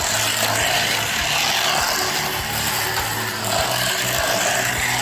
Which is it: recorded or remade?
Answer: recorded